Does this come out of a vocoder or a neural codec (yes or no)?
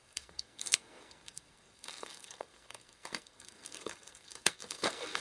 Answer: yes